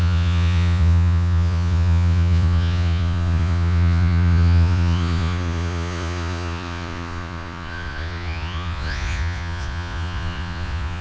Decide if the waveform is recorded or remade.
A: remade